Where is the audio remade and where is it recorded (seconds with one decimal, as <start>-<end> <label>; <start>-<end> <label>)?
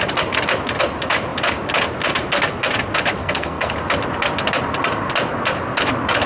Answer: 0.0-3.2 recorded; 3.2-3.7 remade; 3.7-6.3 recorded